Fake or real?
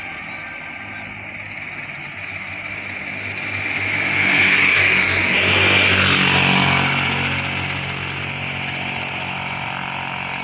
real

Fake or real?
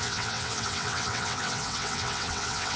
fake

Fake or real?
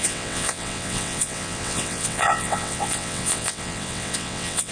fake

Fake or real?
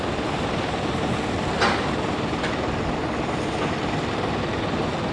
real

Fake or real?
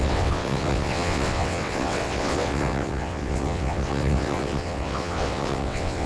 fake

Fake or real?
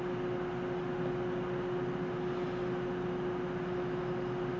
real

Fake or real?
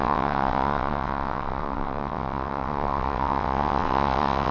fake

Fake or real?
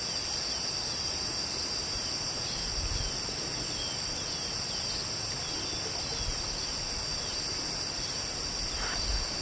real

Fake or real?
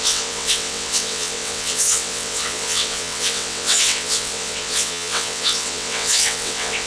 fake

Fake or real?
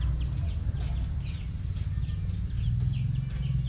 real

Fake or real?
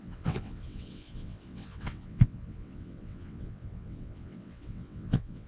fake